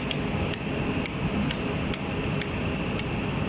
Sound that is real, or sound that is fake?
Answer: real